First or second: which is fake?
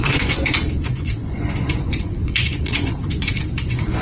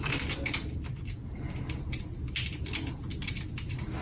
first